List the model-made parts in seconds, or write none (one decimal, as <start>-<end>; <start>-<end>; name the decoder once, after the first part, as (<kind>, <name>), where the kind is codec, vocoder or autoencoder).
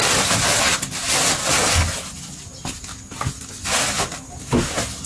none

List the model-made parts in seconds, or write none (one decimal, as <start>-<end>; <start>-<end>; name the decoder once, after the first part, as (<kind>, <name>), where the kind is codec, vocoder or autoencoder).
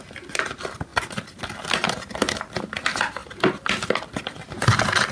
0.9-1.6 (vocoder, BigVGAN v2); 3.2-4.5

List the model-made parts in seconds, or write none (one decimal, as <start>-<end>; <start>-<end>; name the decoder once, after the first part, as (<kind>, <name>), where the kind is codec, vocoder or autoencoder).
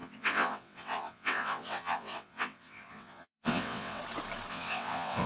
0.0-4.0 (vocoder, WaveNeXt); 4.5-5.3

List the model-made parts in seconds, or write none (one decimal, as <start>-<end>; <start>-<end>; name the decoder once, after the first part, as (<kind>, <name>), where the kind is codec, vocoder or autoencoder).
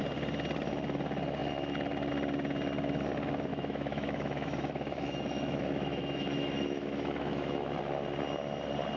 3.5-7.8 (autoencoder, DAC-VAE)